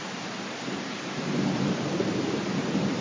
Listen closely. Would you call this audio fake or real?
real